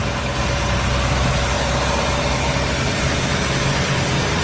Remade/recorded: recorded